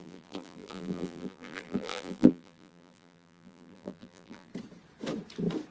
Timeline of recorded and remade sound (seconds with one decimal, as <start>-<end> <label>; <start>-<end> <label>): 0.0-4.5 remade; 4.5-5.7 recorded